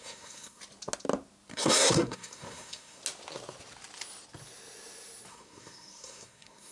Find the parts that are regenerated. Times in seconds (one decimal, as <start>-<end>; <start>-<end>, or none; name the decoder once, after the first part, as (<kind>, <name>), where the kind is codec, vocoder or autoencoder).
0.0-0.6 (codec, SNAC); 1.5-3.0; 5.3-6.7